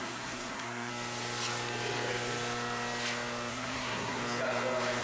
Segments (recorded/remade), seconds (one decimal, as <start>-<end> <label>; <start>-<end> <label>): 0.0-0.9 remade; 0.9-3.5 recorded; 3.5-4.2 remade; 4.2-5.0 recorded